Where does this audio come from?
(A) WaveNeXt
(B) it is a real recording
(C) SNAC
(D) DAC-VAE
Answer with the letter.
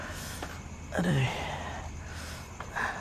B